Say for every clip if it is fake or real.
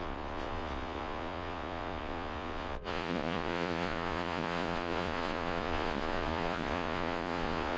fake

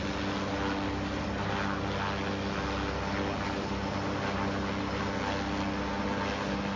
real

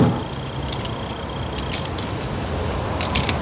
real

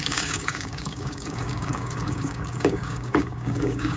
fake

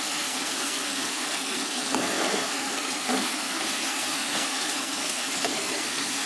fake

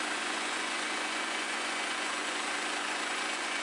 fake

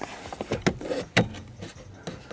real